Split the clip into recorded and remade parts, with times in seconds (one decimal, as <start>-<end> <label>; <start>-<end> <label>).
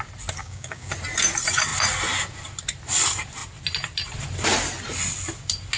0.0-0.4 recorded; 0.4-0.9 remade; 0.9-5.8 recorded